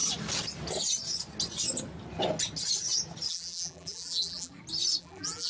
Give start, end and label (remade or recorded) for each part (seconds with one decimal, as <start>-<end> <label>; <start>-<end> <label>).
0.0-3.3 recorded; 3.3-4.5 remade; 4.5-5.0 recorded; 5.0-5.5 remade